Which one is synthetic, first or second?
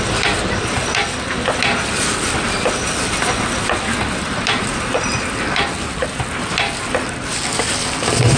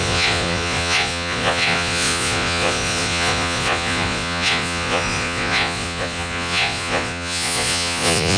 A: second